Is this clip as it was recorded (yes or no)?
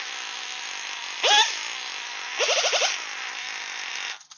yes